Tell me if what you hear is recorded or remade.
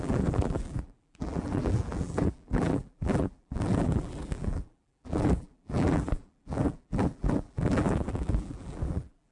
remade